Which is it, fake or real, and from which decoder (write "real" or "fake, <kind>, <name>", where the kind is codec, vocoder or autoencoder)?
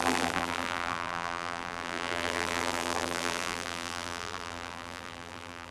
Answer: fake, vocoder, BigVGAN v2